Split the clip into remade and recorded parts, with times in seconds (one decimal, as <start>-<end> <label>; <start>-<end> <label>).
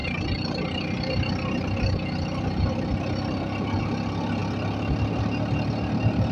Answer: 0.0-6.3 recorded